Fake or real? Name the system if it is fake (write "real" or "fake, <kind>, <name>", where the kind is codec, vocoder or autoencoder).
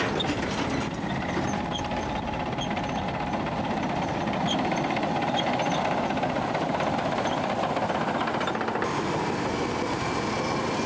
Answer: real